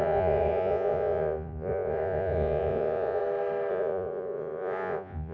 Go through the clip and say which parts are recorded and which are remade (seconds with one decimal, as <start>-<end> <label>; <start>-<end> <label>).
0.0-3.2 remade; 3.2-3.7 recorded; 3.7-5.3 remade